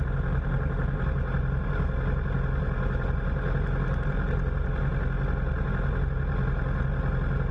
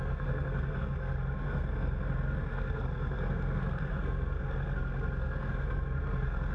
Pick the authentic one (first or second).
first